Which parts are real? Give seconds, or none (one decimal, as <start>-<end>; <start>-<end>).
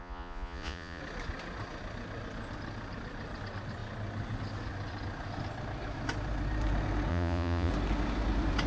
1.0-7.1; 7.7-8.7